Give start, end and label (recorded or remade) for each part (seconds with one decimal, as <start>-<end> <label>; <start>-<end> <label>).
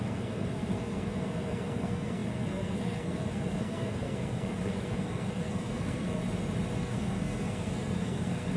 0.0-6.2 remade; 6.2-6.8 recorded; 6.8-8.6 remade